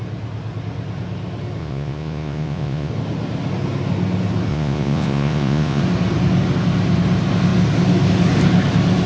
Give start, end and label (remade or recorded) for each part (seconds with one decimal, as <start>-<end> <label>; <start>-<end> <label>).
0.0-1.6 recorded; 1.6-2.9 remade; 2.9-4.5 recorded; 4.5-5.8 remade; 5.8-9.1 recorded